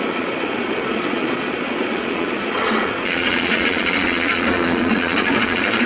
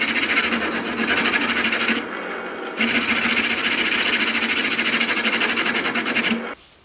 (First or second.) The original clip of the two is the second